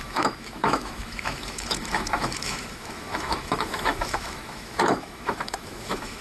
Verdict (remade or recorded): remade